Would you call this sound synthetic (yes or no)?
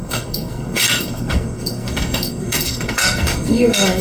yes